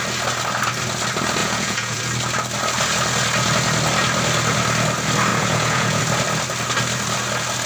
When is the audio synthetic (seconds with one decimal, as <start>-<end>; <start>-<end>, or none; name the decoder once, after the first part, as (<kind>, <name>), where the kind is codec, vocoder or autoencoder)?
1.4-2.0 (vocoder, Vocos); 5.3-6.0